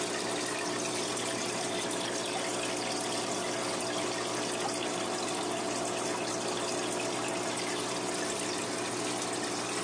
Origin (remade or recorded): recorded